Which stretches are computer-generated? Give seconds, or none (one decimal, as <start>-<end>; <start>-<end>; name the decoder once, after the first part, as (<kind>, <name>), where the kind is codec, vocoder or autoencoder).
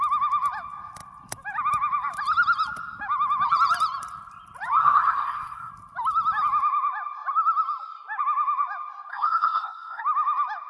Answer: 4.8-5.7 (codec, SNAC); 9.1-10.0